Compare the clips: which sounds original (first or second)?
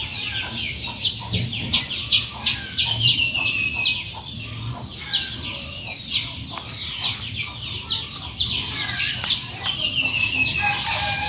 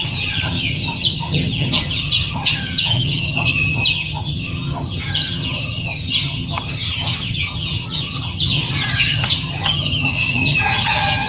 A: first